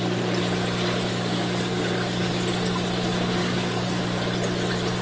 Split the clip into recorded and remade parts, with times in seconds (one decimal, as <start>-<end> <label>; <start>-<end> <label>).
0.0-1.1 recorded; 1.1-2.3 remade; 2.3-3.4 recorded; 3.4-4.0 remade; 4.0-5.0 recorded